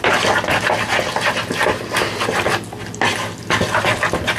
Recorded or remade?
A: recorded